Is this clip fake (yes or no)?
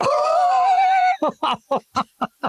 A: yes